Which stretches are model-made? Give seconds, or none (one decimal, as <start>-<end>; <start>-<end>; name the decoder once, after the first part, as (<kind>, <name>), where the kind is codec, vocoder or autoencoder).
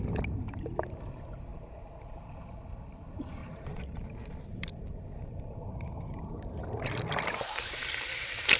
1.5-2.4 (vocoder, BigVGAN v2); 3.4-7.2